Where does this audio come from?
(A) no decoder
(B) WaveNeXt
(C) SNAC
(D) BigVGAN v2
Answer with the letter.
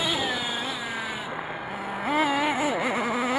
A